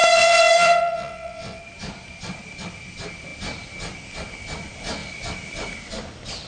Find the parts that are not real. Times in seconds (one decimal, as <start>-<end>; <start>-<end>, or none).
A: 0.0-1.6